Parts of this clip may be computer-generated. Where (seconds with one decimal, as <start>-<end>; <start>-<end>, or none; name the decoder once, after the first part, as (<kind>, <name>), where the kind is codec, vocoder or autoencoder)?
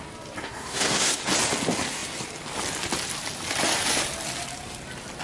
0.4-1.2 (codec, SNAC)